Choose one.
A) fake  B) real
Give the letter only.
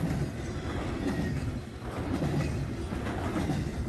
B